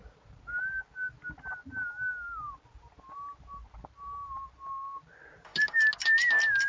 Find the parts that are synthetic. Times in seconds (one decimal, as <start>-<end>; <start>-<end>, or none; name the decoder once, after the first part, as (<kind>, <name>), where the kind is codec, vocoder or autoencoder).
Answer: none